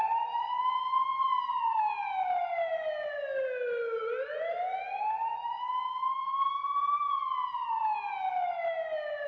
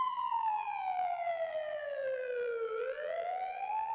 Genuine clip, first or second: first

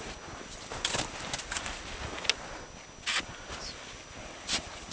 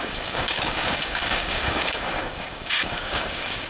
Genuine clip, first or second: first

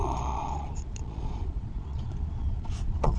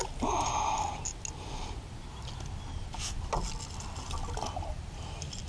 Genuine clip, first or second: second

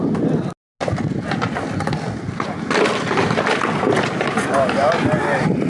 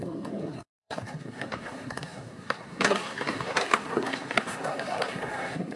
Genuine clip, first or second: first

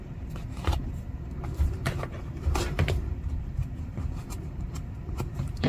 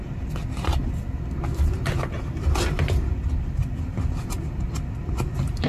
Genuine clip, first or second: second